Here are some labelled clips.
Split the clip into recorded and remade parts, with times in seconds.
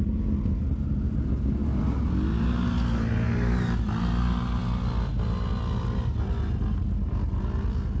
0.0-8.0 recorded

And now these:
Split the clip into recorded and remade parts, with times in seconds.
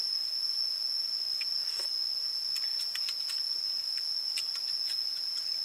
0.0-5.6 recorded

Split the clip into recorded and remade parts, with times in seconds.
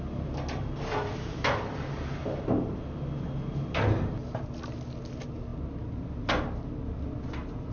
0.0-7.7 recorded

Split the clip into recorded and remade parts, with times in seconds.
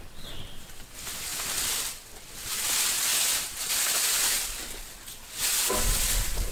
0.0-6.5 recorded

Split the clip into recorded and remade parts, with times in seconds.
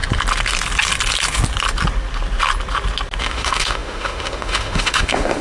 0.0-3.2 recorded; 3.2-5.4 remade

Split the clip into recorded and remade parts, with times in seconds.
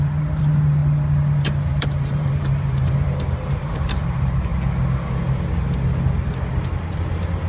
0.0-0.8 remade; 0.8-1.6 recorded; 1.6-4.5 remade; 4.5-7.5 recorded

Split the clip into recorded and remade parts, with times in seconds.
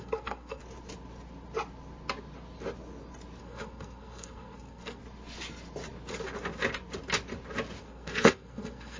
0.0-0.6 remade; 0.6-3.4 recorded; 3.4-5.0 remade; 5.0-7.8 recorded; 7.8-9.0 remade